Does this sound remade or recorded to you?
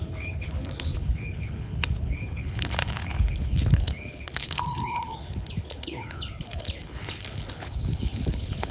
remade